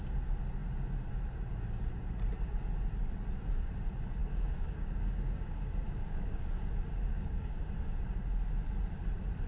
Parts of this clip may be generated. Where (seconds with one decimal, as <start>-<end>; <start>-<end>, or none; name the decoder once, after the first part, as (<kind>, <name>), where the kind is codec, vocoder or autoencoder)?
4.2-6.6 (codec, DAC); 7.1-7.6